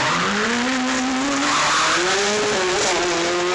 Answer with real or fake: real